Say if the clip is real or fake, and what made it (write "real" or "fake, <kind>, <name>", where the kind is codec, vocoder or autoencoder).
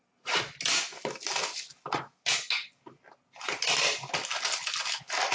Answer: real